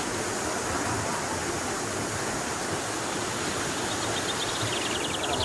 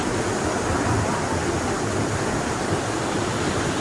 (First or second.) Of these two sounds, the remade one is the second